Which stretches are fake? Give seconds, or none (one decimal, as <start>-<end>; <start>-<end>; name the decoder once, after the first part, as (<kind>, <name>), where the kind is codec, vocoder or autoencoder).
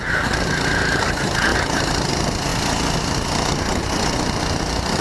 none